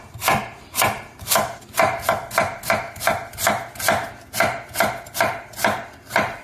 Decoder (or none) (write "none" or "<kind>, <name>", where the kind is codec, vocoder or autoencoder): none